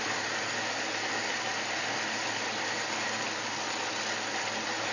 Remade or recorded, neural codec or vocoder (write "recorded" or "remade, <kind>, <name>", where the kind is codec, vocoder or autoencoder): recorded